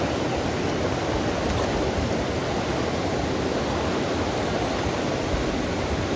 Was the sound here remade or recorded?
recorded